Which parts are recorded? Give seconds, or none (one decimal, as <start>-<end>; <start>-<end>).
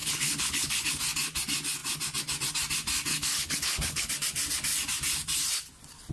0.9-3.1; 4.1-6.1